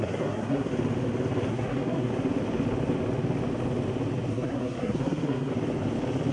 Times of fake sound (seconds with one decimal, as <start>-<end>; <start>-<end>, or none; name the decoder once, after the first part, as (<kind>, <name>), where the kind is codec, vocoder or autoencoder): 0.0-0.7 (codec, SNAC); 1.5-2.1; 4.3-5.5